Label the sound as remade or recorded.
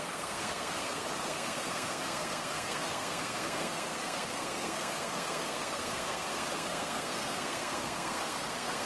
remade